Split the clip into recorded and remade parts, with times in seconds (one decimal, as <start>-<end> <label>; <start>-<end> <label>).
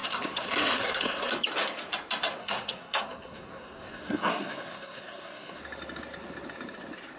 0.0-1.3 remade; 1.3-2.4 recorded; 2.4-5.6 remade; 5.6-7.2 recorded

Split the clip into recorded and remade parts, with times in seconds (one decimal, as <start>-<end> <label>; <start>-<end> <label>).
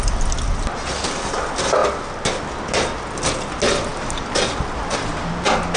0.0-5.8 recorded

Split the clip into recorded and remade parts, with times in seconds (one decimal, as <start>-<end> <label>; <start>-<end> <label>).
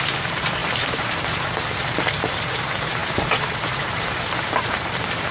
0.0-5.3 remade